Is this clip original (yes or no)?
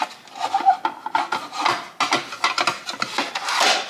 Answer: yes